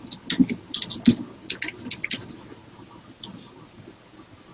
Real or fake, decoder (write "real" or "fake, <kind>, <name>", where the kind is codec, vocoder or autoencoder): real